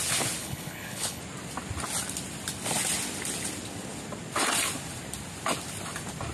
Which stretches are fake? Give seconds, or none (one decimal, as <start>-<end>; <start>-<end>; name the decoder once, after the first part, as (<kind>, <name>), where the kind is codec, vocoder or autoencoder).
0.4-1.2 (codec, HILCodec)